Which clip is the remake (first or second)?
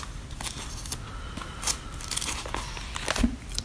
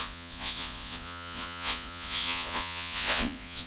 second